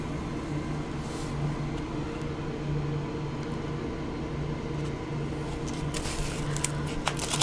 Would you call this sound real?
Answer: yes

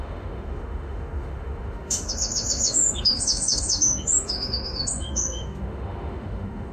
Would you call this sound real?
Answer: no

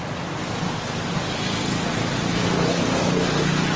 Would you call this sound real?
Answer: yes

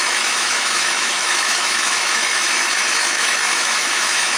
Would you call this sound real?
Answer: no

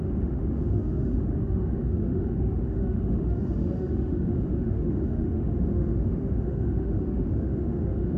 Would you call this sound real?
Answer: no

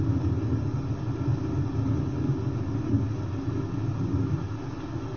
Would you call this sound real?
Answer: yes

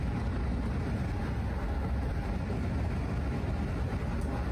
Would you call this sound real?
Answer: yes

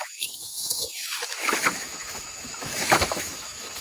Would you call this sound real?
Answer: no